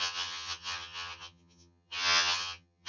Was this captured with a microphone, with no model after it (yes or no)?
no